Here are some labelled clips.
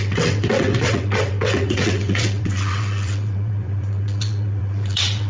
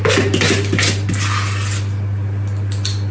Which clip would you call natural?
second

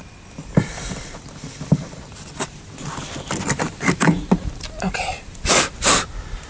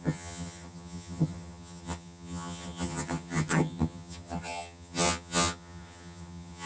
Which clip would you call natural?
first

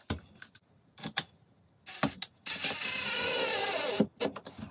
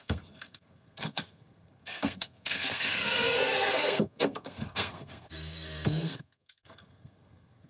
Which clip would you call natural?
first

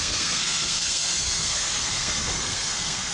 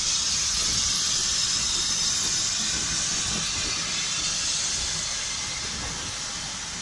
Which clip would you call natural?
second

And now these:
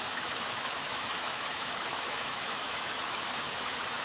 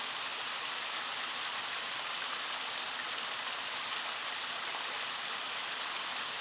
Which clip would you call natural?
second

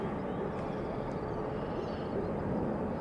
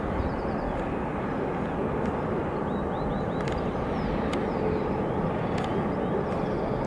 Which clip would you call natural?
first